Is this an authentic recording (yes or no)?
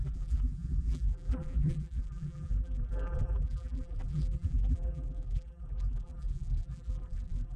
no